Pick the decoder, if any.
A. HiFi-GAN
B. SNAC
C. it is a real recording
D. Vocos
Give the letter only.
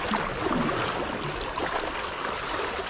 C